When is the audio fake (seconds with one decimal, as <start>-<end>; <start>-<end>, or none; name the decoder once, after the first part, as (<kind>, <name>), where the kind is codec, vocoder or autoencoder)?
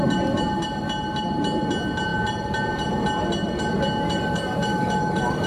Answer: 4.7-5.5 (autoencoder, DAC-VAE)